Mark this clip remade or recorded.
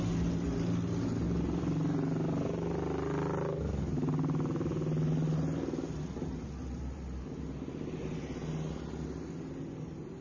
recorded